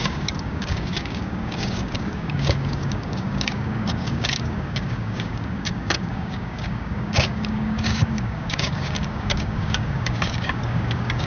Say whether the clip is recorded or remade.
remade